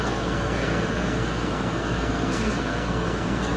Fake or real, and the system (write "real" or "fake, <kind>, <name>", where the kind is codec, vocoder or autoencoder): fake, codec, SNAC